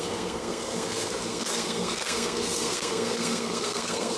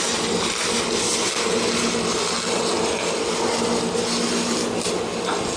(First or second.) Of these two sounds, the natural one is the second